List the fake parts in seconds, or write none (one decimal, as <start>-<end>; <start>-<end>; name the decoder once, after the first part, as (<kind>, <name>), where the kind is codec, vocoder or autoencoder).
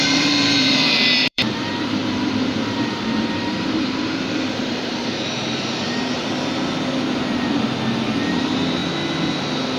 0.0-6.2 (vocoder, BigVGAN v2); 8.3-8.8